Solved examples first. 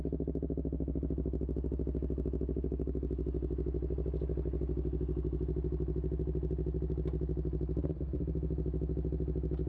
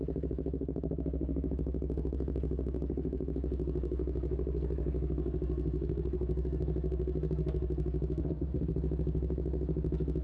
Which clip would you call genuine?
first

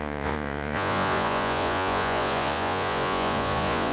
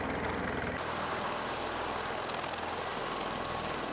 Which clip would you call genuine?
second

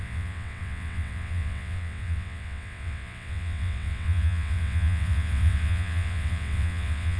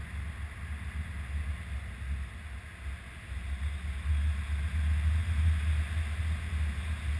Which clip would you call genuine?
second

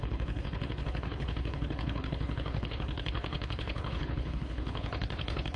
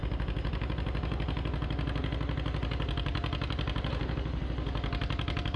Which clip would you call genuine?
second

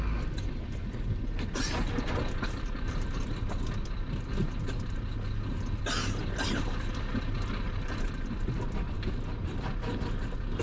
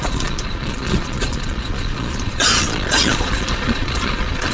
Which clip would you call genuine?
first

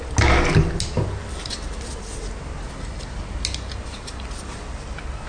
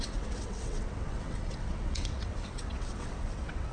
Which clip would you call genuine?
first